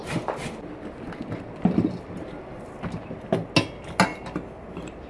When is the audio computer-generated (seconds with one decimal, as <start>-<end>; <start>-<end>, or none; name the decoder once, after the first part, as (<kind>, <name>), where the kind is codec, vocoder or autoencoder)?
0.0-2.7 (vocoder, BigVGAN v2)